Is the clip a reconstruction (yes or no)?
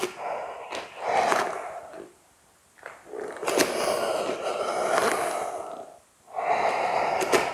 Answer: no